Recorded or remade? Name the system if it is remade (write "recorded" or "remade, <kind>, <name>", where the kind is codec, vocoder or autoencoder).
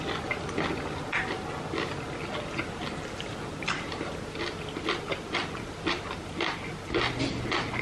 recorded